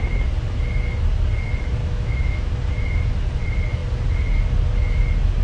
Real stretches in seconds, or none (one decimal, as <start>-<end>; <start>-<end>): 0.0-1.8; 2.5-5.4